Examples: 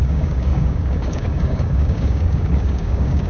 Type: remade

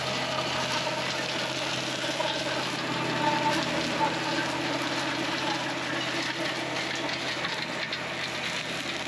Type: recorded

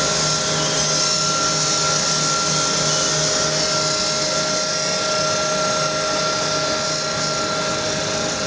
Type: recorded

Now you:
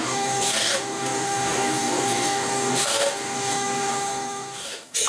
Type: remade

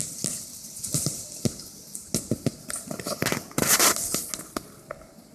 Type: recorded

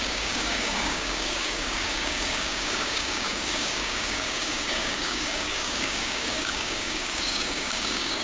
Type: remade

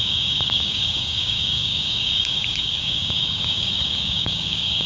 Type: remade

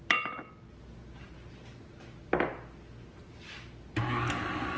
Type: recorded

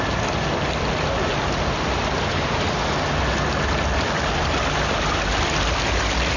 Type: recorded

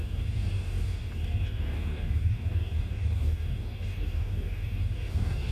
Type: remade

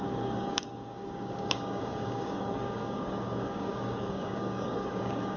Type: remade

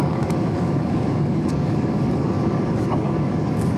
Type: remade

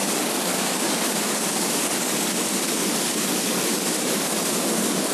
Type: remade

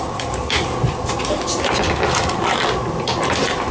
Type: recorded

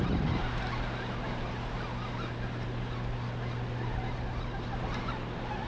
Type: recorded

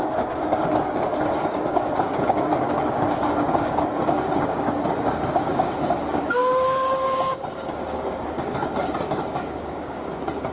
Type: remade